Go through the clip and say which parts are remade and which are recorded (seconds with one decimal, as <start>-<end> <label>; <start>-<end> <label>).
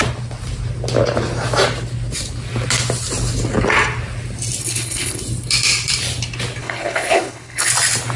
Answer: 0.0-4.6 recorded; 4.6-5.2 remade; 5.2-6.6 recorded; 6.6-7.7 remade; 7.7-8.2 recorded